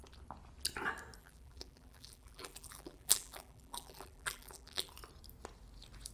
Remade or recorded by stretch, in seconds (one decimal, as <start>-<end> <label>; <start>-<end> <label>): 0.0-1.2 recorded; 1.2-4.9 remade; 4.9-6.1 recorded